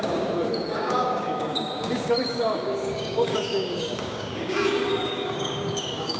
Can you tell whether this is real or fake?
fake